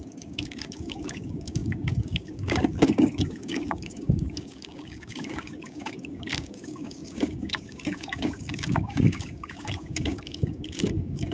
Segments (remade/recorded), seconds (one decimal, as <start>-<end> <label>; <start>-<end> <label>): 0.0-11.3 remade